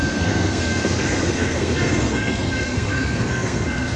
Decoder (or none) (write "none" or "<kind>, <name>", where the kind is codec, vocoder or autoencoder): codec, SNAC